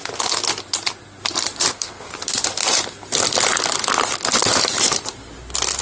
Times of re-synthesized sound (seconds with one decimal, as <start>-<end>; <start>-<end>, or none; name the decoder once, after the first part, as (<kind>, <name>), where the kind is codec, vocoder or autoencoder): 1.7-2.1 (codec, SNAC)